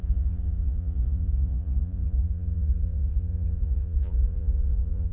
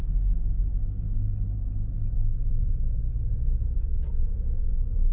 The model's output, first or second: first